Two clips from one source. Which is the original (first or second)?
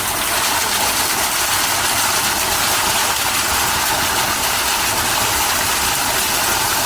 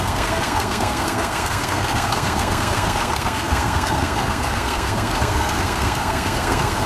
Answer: first